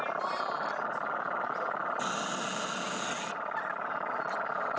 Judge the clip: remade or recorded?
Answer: recorded